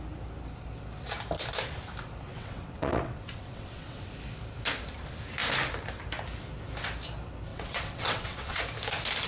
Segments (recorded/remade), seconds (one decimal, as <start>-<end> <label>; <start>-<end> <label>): 0.0-2.3 recorded; 2.3-4.1 remade; 4.1-7.5 recorded; 7.5-8.6 remade; 8.6-9.3 recorded